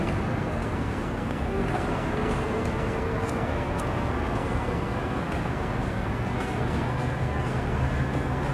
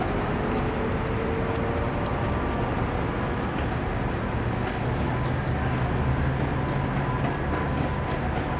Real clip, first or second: second